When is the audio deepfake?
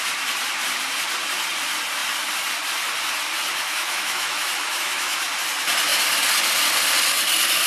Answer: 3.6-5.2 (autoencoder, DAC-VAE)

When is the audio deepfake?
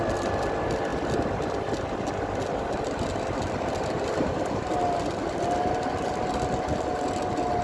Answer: none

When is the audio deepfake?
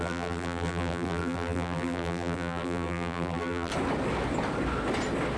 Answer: 0.0-3.7 (vocoder, BigVGAN v2)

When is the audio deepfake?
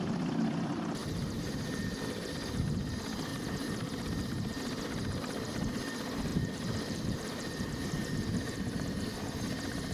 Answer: 1.0-2.0 (vocoder, BigVGAN v2); 3.3-4.6; 6.3-9.1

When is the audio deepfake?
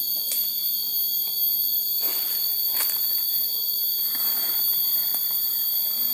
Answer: 2.1-3.3 (vocoder, BigVGAN v2); 5.1-5.6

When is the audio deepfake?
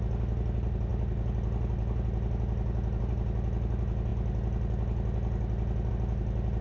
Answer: none